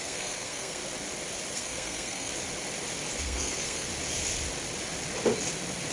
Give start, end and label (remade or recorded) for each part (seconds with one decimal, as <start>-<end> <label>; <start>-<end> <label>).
0.0-0.8 remade; 0.8-1.5 recorded; 1.5-2.3 remade; 2.3-3.2 recorded; 3.2-3.9 remade; 3.9-5.9 recorded